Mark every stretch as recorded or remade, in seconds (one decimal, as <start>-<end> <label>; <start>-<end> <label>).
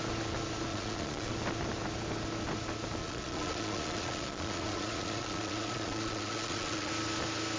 0.0-0.7 recorded; 0.7-1.3 remade; 1.3-3.0 recorded; 3.0-6.9 remade; 6.9-7.6 recorded